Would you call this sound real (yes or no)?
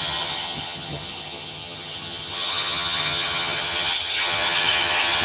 no